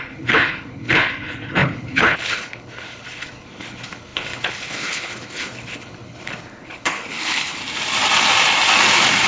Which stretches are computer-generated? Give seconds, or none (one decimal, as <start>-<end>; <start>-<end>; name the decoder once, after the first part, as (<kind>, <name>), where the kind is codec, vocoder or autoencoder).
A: 0.0-7.6 (codec, HILCodec)